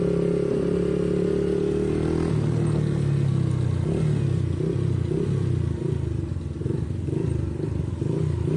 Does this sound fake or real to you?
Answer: real